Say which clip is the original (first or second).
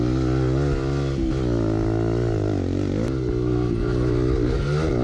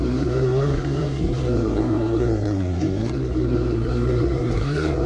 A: first